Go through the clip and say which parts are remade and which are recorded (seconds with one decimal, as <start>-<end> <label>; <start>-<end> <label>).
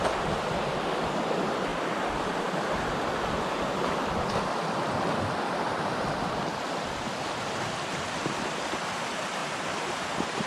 0.0-1.7 recorded; 1.7-4.2 remade; 4.2-9.4 recorded; 9.4-10.5 remade